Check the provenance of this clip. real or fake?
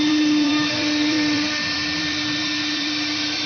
fake